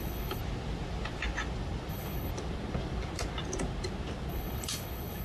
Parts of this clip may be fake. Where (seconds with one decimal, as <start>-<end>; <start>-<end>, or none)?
0.0-0.4; 1.9-2.3; 4.3-5.2